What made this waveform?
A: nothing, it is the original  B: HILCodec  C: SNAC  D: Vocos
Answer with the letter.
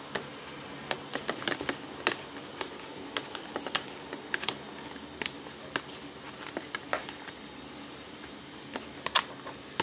A